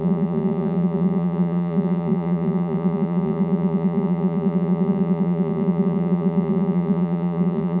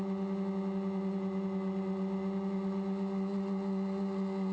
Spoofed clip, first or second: first